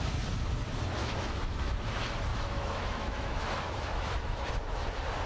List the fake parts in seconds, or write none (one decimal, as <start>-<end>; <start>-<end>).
1.0-1.7; 2.3-4.5